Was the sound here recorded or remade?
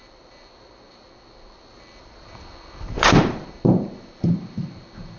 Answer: remade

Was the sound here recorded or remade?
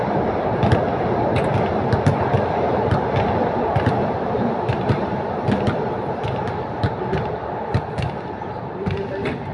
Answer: recorded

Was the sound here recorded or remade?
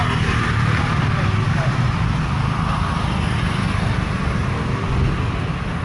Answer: recorded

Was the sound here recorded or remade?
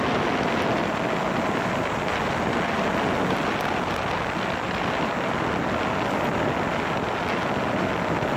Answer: recorded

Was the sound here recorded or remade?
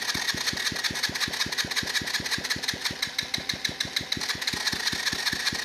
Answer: recorded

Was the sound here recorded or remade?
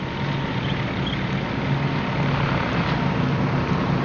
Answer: recorded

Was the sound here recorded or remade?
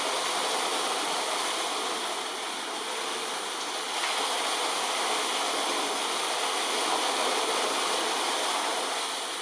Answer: recorded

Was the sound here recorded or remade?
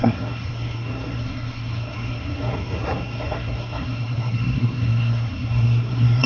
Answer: remade